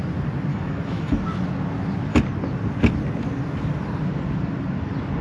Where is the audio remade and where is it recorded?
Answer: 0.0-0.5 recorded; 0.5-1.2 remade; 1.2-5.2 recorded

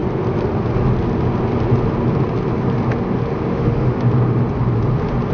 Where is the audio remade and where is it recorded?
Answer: 0.0-3.5 recorded; 3.5-4.0 remade; 4.0-5.3 recorded

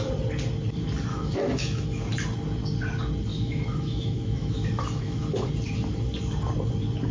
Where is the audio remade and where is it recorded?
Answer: 0.0-1.1 recorded; 1.1-2.0 remade; 2.0-3.3 recorded; 3.3-5.5 remade; 5.5-7.1 recorded

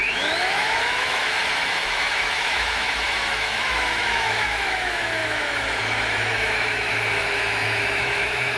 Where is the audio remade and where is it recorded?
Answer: 0.0-8.6 remade

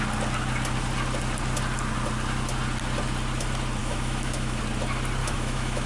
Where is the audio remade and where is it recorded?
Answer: 0.0-3.8 recorded; 3.8-4.6 remade; 4.6-5.2 recorded; 5.2-5.9 remade

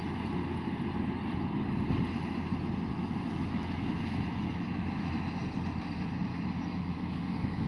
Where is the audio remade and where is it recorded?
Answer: 0.0-2.9 recorded; 2.9-5.2 remade; 5.2-6.3 recorded; 6.3-7.7 remade

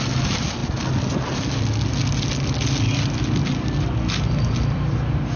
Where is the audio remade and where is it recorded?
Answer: 0.0-5.4 recorded